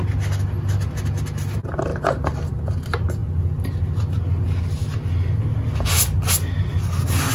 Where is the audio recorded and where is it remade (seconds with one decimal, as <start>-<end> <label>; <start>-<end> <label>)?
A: 0.0-7.3 recorded